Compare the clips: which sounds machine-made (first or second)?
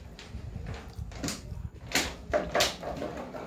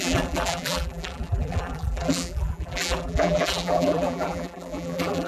second